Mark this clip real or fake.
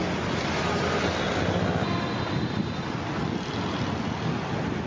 real